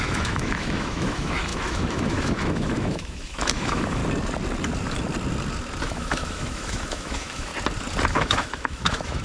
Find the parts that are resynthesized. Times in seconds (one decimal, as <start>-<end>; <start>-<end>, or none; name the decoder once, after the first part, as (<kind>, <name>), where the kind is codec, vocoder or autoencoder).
0.0-4.0 (autoencoder, DAC-VAE); 5.8-7.5; 8.1-9.2